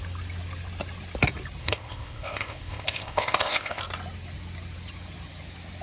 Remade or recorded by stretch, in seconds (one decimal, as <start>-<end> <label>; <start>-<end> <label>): 0.0-1.6 recorded; 1.6-3.8 remade; 3.8-5.8 recorded